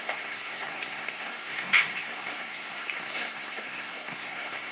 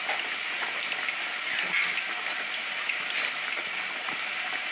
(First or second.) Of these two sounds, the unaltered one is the second